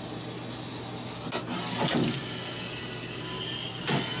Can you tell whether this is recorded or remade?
recorded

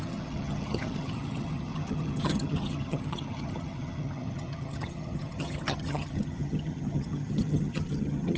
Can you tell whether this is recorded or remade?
remade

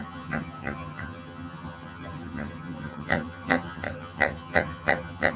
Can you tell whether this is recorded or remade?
remade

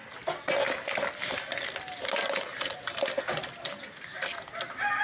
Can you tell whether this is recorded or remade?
recorded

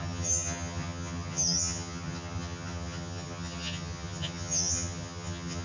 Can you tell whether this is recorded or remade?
remade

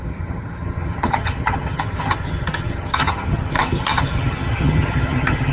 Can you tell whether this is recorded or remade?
remade